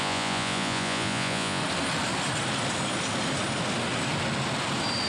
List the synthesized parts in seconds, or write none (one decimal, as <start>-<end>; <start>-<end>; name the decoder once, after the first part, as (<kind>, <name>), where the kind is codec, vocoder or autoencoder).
0.0-1.6 (vocoder, Vocos)